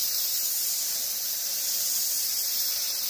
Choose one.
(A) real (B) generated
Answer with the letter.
A